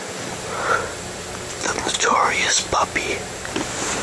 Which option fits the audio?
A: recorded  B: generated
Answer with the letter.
A